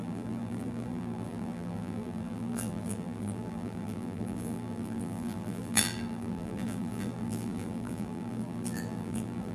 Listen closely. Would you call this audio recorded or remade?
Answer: remade